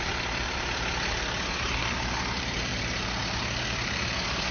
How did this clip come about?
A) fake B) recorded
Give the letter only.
A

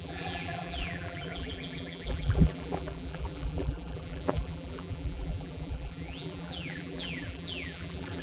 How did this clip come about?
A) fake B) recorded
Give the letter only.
A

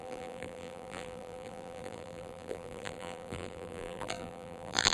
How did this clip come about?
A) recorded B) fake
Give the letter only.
B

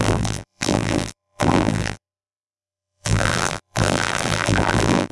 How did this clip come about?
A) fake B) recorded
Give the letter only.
A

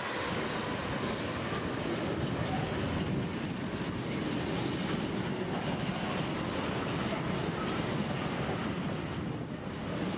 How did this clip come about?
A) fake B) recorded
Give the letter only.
B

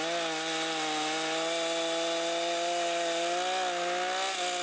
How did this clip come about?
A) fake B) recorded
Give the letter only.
B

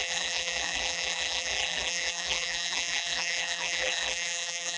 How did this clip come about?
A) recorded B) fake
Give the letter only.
B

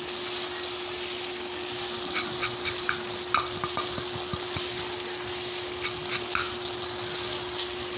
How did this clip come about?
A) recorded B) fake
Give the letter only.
A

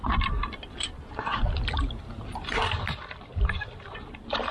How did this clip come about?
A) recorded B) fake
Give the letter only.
A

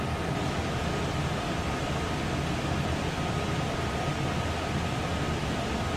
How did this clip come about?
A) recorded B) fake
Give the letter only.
A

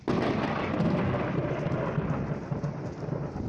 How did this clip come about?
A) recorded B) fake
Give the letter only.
A